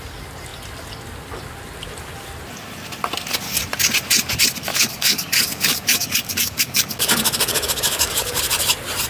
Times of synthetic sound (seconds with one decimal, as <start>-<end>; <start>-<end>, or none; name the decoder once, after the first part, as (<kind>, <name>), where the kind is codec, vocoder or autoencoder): 4.7-8.4 (codec, DAC)